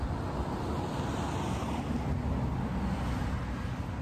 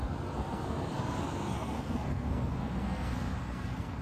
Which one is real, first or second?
first